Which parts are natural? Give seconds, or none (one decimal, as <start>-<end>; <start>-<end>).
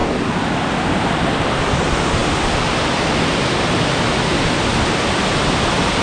0.0-6.0